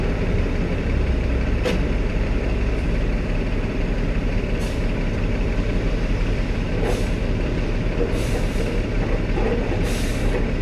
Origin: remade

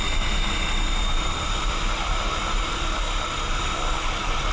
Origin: remade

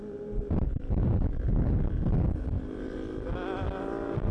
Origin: recorded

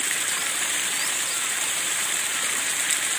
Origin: remade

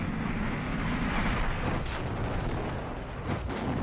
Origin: recorded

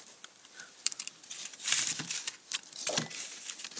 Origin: remade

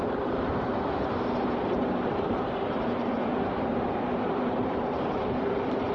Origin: remade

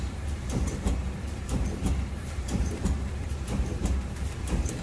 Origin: remade